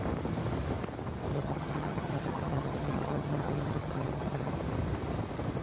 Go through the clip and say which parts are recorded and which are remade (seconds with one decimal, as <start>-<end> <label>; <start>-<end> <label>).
0.0-1.3 recorded; 1.3-4.5 remade; 4.5-5.6 recorded